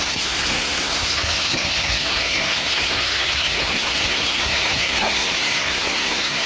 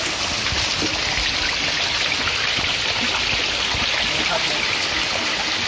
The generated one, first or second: first